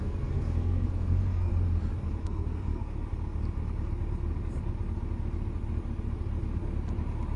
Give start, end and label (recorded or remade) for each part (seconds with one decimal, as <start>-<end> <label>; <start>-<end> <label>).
0.0-1.5 remade; 1.5-2.2 recorded; 2.2-3.1 remade; 3.1-7.4 recorded